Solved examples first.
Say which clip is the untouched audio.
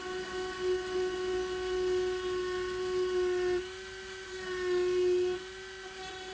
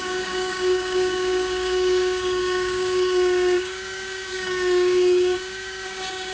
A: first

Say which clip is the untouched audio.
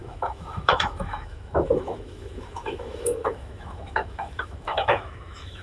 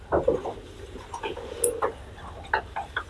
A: second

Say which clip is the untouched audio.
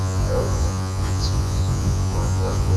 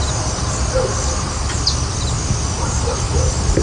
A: second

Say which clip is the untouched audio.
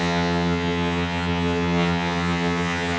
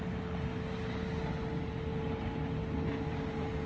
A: second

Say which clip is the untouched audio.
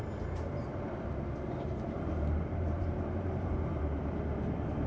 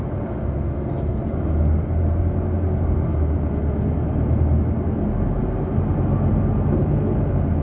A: second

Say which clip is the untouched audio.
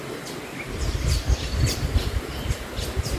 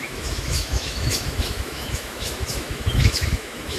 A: first